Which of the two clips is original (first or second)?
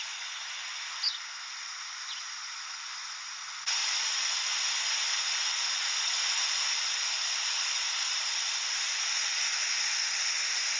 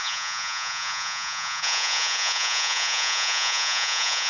first